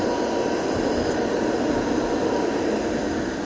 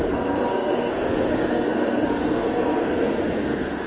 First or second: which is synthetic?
second